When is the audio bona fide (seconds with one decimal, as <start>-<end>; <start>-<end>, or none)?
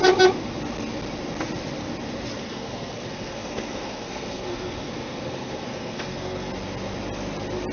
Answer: 0.0-2.4; 6.5-7.7